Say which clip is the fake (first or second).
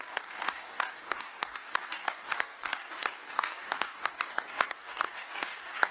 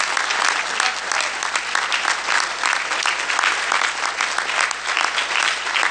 first